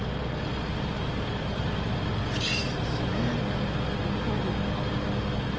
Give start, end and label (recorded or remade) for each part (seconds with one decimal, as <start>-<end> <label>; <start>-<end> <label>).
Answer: 0.0-0.5 recorded; 0.5-1.9 remade; 1.9-2.6 recorded; 2.6-3.4 remade; 3.4-5.6 recorded